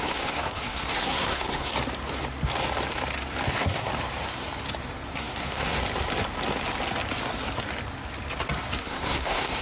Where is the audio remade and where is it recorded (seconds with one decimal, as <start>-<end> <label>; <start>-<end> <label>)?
0.0-1.7 remade; 1.7-3.5 recorded; 3.5-3.9 remade; 3.9-5.1 recorded; 5.1-5.8 remade; 5.8-8.8 recorded; 8.8-9.6 remade